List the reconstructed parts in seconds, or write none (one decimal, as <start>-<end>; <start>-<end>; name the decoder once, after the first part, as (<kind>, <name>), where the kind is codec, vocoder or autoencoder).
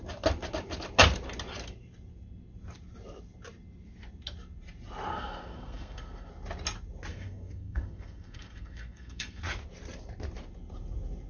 5.1-6.3 (codec, SNAC); 7.1-9.4